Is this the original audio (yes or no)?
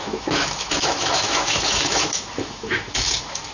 no